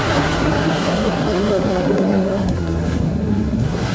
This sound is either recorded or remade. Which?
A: remade